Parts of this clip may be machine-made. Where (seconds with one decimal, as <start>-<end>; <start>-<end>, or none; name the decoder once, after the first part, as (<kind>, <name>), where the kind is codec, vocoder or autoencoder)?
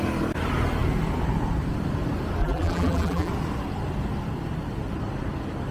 2.4-3.3 (vocoder, BigVGAN v2)